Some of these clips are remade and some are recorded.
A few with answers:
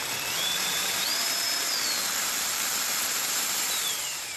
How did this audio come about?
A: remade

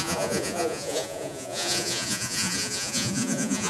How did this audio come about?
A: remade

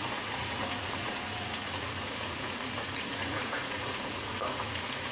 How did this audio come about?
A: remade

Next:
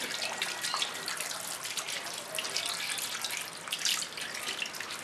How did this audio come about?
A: recorded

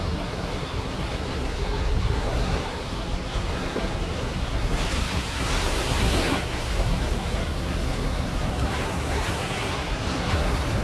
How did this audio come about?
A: remade